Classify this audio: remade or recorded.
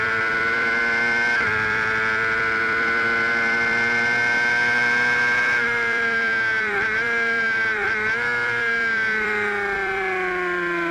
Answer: remade